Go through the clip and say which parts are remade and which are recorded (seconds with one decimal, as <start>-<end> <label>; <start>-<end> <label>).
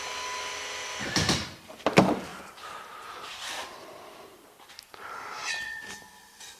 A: 0.0-2.3 recorded; 2.3-4.7 remade; 4.7-5.4 recorded; 5.4-6.6 remade